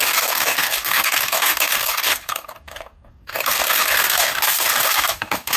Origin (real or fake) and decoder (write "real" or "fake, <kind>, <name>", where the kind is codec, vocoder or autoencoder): fake, codec, DAC